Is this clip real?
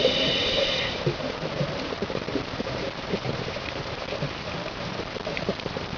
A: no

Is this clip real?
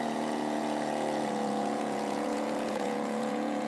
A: no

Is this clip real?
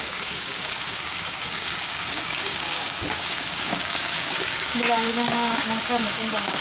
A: no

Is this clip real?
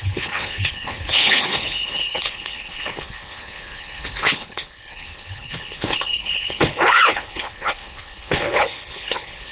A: no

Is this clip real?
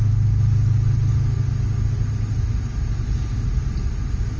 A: yes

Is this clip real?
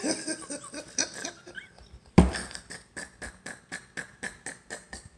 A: yes